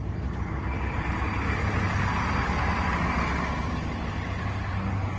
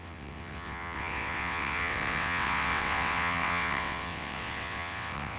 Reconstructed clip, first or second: second